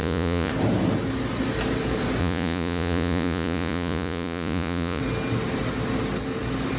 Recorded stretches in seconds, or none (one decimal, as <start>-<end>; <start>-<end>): 0.5-2.2; 5.0-6.8